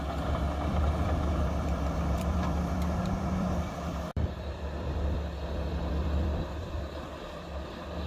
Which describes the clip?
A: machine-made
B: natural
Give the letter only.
A